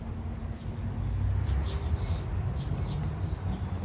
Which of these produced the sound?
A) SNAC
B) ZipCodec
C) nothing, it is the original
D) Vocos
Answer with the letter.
C